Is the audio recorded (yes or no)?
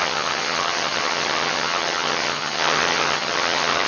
no